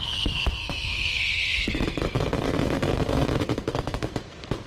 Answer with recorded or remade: remade